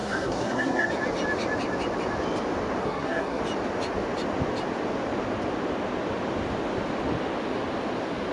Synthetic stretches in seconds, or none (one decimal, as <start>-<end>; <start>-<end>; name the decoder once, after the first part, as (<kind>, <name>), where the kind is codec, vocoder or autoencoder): 0.0-0.9 (codec, SNAC); 2.8-3.4